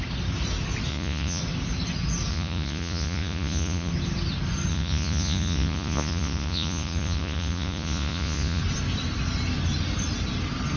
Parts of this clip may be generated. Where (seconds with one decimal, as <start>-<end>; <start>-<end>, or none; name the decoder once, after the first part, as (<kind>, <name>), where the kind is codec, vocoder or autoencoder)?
0.9-1.4 (vocoder, Vocos); 2.3-3.9; 4.7-8.6